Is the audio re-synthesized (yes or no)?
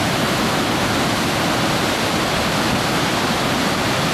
no